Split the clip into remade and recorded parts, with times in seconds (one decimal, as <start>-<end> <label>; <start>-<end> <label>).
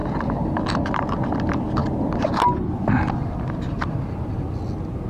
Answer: 0.0-5.1 recorded